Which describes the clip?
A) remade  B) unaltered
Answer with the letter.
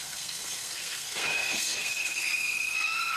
A